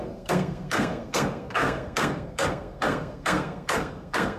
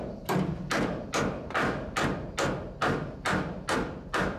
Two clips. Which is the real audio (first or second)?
second